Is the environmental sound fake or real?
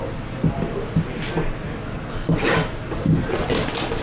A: real